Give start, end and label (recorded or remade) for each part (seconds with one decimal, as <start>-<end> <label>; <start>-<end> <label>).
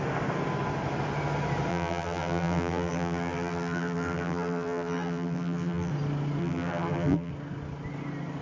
0.0-1.7 recorded; 1.7-5.9 remade; 5.9-6.4 recorded; 6.4-7.3 remade; 7.3-8.4 recorded